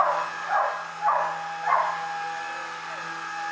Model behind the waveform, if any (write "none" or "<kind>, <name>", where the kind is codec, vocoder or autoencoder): none